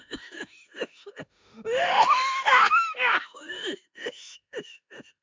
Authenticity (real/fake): fake